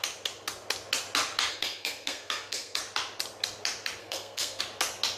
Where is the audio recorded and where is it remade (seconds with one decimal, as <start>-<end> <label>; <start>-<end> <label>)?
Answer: 0.0-1.5 recorded; 1.5-2.8 remade; 2.8-4.0 recorded; 4.0-4.6 remade; 4.6-5.2 recorded